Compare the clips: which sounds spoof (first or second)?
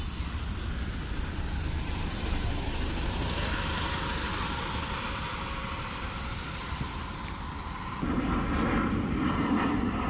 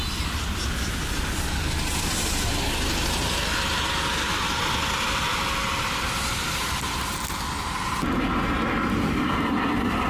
first